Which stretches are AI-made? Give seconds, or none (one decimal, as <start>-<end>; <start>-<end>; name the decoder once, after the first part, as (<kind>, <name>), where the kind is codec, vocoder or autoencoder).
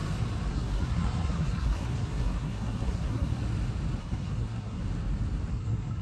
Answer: 0.5-3.4 (codec, SNAC); 4.0-4.8; 5.5-6.0